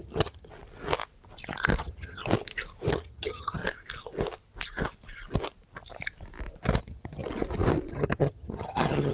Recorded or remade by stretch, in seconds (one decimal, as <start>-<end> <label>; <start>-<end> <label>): 0.0-0.5 remade; 0.5-1.8 recorded; 1.8-2.2 remade; 2.2-2.9 recorded; 2.9-3.6 remade; 3.6-6.8 recorded; 6.8-7.2 remade; 7.2-7.9 recorded; 7.9-9.1 remade